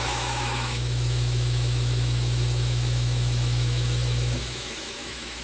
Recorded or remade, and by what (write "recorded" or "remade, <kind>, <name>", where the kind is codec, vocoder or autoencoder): remade, autoencoder, DAC-VAE